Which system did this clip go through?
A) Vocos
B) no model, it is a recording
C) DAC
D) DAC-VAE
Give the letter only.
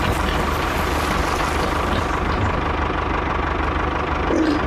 B